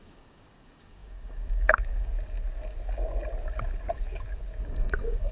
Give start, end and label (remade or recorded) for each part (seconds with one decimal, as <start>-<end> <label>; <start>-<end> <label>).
0.0-2.1 remade; 2.1-4.6 recorded; 4.6-5.3 remade